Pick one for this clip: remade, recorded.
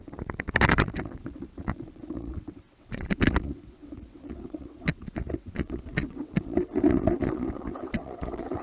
remade